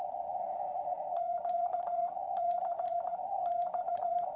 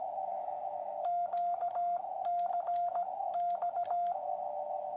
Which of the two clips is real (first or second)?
second